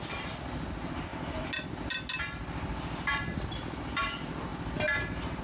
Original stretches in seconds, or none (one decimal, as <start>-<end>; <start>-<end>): 0.0-5.4